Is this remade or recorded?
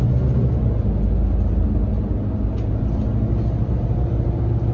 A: recorded